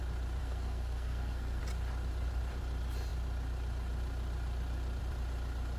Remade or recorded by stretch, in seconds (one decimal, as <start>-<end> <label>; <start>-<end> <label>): 0.0-0.4 recorded; 0.4-1.6 remade; 1.6-5.8 recorded